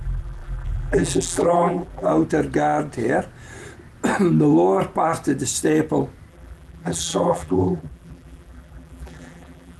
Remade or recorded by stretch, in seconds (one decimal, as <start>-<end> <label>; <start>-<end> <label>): 0.0-2.1 remade; 2.1-6.3 recorded; 6.3-9.8 remade